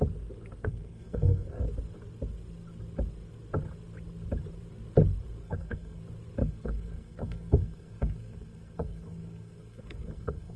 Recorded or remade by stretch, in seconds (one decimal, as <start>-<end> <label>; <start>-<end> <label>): 0.0-0.6 recorded; 0.6-1.6 remade; 1.6-5.4 recorded; 5.4-6.0 remade; 6.0-6.4 recorded; 6.4-10.6 remade